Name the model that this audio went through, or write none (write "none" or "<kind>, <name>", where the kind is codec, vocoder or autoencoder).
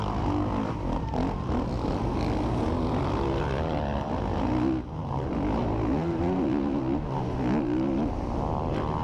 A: none